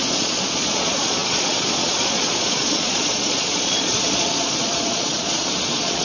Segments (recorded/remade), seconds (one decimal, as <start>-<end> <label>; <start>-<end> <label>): 0.0-6.0 remade